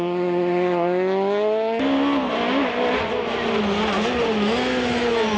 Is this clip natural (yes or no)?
yes